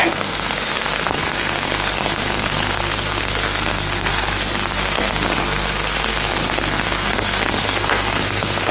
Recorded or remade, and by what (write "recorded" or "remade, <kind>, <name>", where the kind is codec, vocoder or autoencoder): remade, codec, SNAC